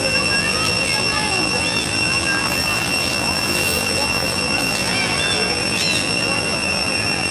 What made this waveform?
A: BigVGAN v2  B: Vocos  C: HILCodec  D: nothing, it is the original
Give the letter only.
A